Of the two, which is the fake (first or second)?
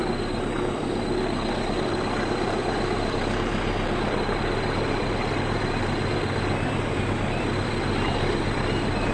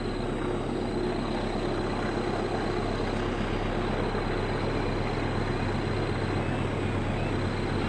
first